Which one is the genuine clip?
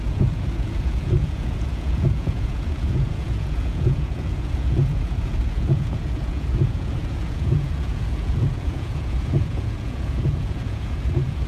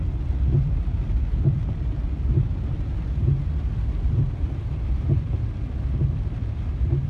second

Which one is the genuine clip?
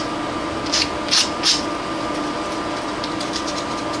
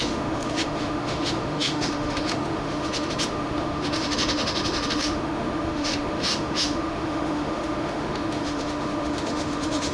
first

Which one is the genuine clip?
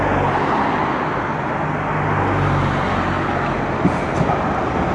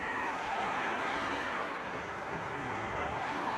first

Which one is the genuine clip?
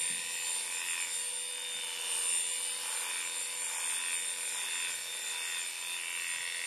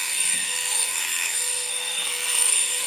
first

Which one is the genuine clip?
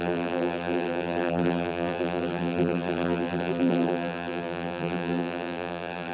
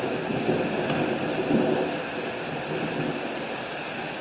second